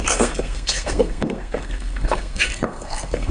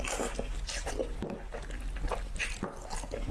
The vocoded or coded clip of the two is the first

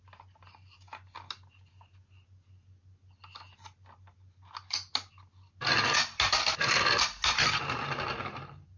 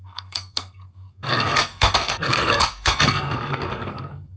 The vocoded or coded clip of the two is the second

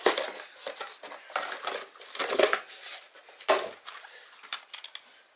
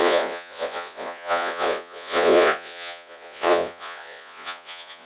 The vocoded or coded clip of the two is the second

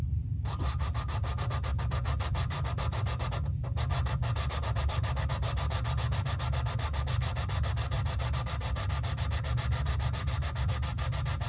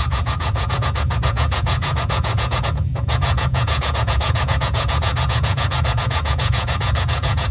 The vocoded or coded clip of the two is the second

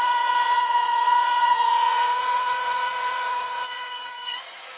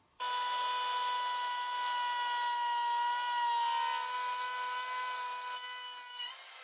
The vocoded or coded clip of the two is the first